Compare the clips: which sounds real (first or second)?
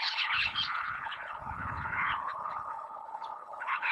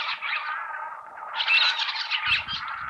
second